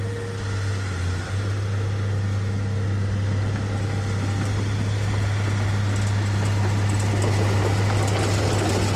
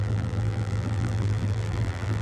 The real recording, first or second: first